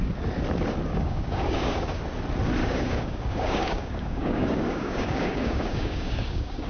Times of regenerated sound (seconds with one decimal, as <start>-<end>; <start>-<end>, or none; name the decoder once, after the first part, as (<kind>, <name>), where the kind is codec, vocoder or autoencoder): 0.9-2.0 (codec, DAC); 2.6-6.7